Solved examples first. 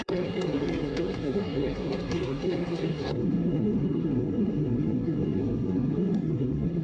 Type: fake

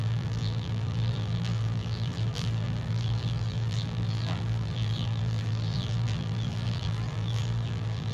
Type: fake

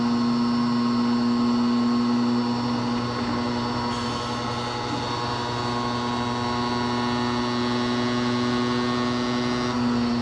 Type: real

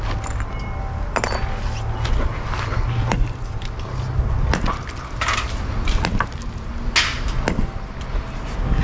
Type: real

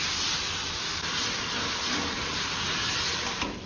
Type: real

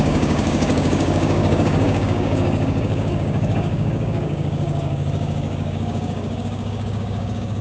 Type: fake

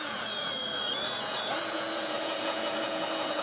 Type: fake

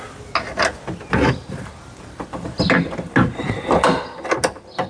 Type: real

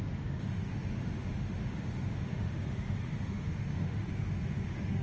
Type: fake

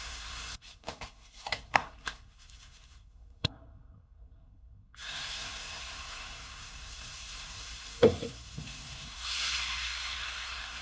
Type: fake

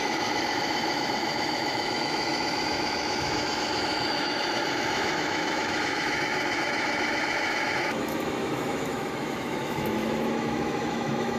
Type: fake